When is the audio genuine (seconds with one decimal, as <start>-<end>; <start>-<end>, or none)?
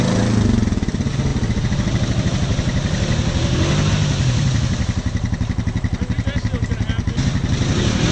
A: 0.0-8.1